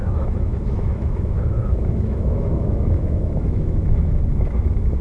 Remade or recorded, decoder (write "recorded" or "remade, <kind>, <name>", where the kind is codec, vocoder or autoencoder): remade, autoencoder, DAC-VAE